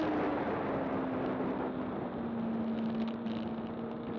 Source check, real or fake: real